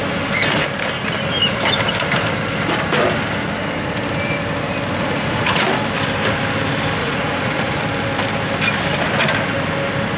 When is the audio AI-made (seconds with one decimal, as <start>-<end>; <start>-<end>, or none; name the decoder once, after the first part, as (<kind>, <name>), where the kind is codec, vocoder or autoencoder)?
5.0-5.6 (vocoder, Vocos); 7.0-7.8